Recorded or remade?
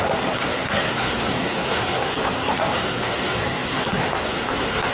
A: remade